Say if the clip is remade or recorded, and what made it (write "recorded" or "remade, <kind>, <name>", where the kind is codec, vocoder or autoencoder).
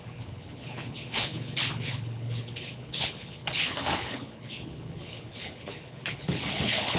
remade, codec, HILCodec